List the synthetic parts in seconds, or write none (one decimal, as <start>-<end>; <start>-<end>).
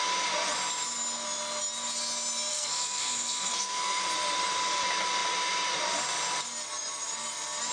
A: 2.5-4.0